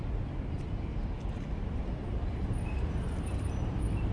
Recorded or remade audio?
remade